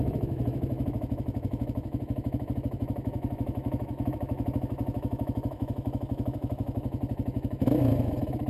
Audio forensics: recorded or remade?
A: remade